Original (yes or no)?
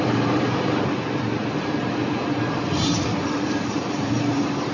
no